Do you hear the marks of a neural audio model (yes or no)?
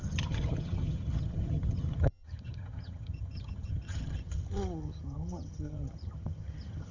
yes